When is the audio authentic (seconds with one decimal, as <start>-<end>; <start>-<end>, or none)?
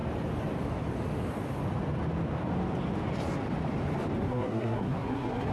0.0-4.2